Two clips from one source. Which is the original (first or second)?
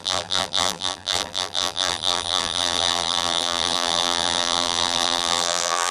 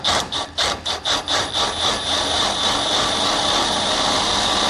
second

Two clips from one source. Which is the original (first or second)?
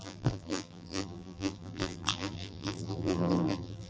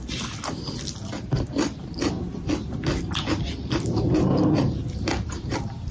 second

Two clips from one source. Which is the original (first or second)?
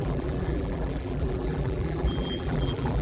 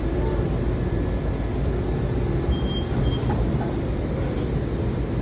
second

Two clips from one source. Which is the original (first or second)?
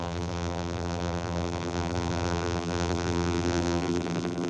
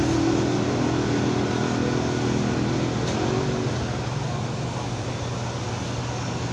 second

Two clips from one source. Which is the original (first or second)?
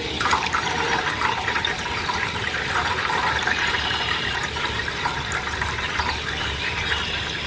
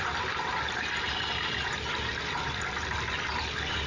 second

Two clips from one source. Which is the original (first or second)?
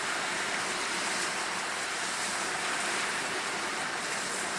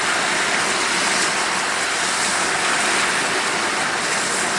second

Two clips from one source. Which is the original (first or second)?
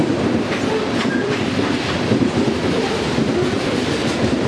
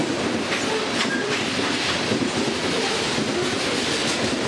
second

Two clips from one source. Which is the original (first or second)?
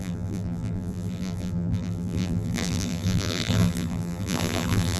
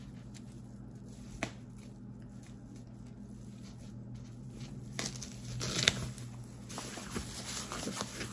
second